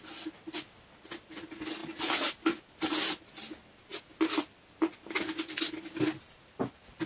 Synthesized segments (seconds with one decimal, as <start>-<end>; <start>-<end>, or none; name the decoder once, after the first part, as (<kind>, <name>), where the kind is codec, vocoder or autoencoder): none